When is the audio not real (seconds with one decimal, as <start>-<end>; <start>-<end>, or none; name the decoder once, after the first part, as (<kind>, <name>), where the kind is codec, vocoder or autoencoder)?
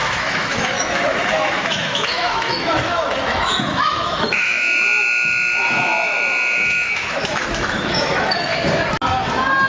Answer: 0.0-8.5 (autoencoder, DAC-VAE)